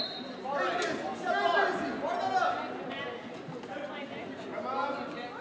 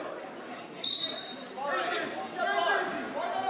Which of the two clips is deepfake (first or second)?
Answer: second